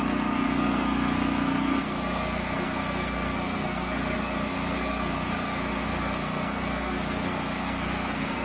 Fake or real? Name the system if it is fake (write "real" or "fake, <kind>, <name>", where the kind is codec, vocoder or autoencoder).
fake, codec, SNAC